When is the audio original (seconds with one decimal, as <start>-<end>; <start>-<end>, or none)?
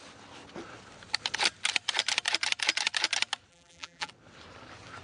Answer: 0.0-3.5; 4.1-5.0